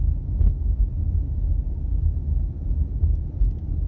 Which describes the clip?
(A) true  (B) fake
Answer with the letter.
A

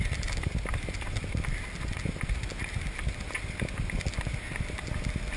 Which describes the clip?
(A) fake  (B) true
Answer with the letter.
B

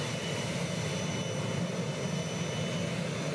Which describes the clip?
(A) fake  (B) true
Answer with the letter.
B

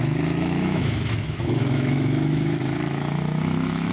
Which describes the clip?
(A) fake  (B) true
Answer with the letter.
A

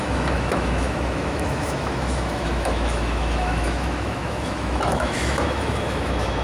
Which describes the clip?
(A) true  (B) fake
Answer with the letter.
B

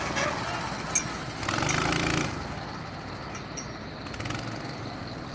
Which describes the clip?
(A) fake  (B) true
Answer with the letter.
B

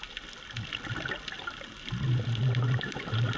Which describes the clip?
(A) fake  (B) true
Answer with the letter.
B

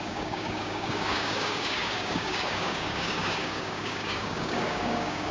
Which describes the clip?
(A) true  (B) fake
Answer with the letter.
B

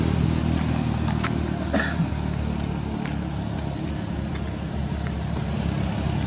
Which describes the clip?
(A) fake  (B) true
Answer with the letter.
B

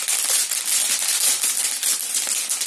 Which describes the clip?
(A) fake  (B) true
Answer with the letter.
B